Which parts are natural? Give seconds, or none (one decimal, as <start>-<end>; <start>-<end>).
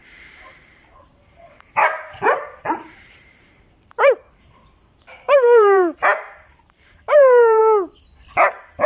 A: 1.8-2.6; 7.6-8.3